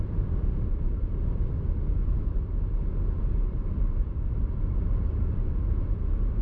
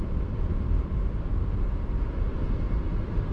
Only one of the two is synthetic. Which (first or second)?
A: second